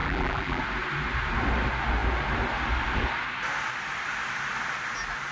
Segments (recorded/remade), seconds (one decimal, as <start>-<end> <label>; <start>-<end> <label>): 0.0-0.6 remade; 0.6-5.3 recorded